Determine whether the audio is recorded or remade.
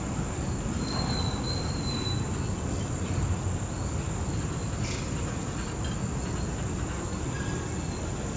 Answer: recorded